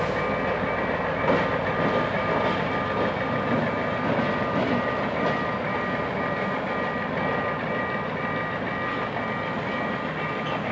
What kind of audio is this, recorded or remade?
recorded